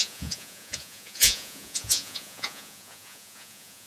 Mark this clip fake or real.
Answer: fake